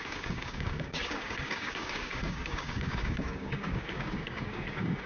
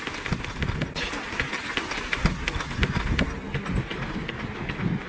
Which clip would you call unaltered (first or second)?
second